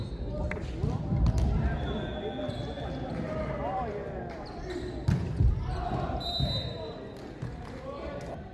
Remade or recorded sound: recorded